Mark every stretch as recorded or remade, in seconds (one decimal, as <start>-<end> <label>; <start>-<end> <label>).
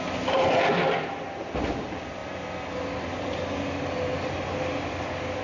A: 0.0-5.4 recorded